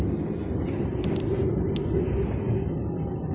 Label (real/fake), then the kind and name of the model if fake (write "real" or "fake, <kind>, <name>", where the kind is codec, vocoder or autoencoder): real